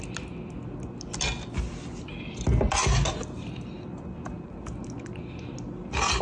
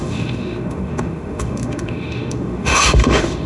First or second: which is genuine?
first